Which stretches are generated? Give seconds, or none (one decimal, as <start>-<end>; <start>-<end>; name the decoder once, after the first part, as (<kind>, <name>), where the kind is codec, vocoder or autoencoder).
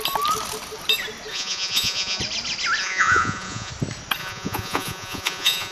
1.3-2.2 (vocoder, Vocos); 2.8-3.7; 4.2-5.7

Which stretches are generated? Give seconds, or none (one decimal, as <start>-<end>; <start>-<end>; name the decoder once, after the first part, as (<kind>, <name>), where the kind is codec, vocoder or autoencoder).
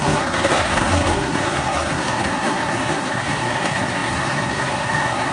0.0-5.3 (codec, SNAC)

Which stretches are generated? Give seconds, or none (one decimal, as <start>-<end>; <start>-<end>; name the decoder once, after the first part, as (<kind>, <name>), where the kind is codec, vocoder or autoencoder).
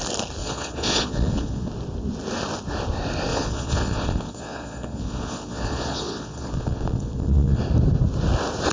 0.4-1.7 (vocoder, Vocos); 3.3-7.6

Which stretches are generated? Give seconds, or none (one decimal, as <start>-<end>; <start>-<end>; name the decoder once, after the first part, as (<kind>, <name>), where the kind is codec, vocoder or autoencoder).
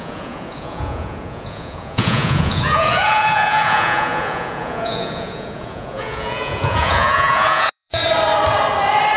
0.0-8.0 (vocoder, Vocos)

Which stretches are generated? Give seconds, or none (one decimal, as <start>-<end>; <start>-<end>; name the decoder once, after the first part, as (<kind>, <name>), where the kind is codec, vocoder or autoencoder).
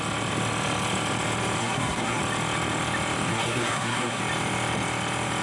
1.6-2.2 (codec, SNAC); 3.3-4.2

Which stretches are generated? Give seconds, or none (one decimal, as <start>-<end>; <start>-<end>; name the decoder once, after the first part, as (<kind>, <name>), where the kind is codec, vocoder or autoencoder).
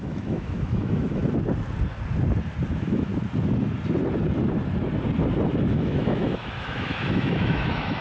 0.0-1.2 (autoencoder, DAC-VAE); 2.7-3.1; 5.7-8.0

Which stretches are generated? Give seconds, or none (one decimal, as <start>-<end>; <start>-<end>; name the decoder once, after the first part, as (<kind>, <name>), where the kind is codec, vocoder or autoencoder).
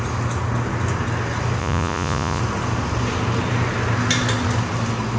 1.6-2.4 (vocoder, Vocos)